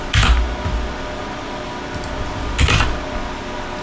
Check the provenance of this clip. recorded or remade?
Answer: recorded